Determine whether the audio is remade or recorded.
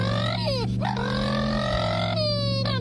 recorded